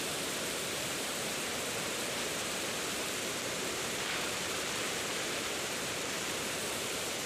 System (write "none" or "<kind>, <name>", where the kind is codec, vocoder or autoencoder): vocoder, BigVGAN v2